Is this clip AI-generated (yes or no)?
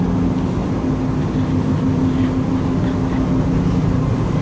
no